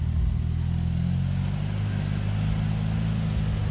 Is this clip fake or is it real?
real